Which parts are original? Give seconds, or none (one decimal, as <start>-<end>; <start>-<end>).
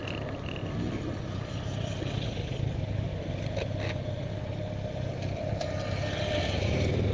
0.0-7.1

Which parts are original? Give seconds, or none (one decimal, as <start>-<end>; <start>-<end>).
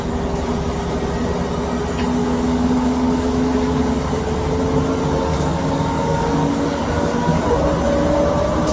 0.0-2.2; 4.2-5.3; 7.4-8.7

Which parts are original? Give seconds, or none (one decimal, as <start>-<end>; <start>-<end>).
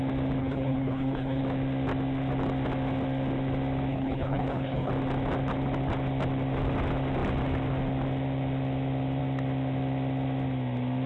0.0-0.4; 1.4-3.9; 4.9-11.1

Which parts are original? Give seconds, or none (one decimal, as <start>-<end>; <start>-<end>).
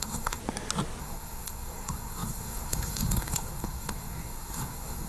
0.4-1.0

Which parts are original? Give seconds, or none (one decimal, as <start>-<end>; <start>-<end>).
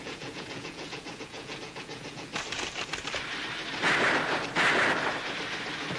2.3-6.0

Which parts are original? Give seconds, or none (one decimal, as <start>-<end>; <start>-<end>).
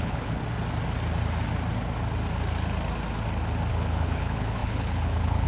0.4-3.7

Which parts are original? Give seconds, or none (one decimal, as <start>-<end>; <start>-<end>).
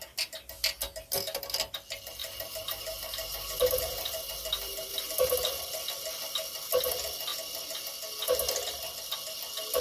0.0-2.2; 5.6-9.8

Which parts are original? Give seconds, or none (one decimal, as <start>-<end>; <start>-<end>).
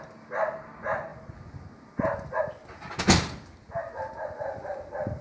0.0-5.2